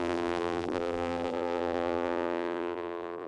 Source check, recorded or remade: remade